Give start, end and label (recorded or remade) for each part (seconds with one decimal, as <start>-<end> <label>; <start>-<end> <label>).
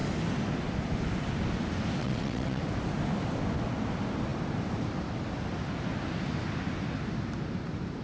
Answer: 0.0-2.0 recorded; 2.0-2.6 remade; 2.6-8.0 recorded